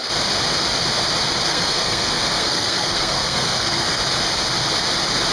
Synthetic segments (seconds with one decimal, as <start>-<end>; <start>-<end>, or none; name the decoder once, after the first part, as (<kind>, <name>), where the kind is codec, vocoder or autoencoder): 1.5-4.0 (codec, SNAC)